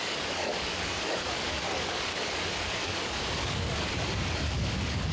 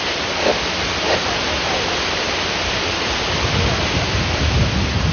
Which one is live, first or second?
second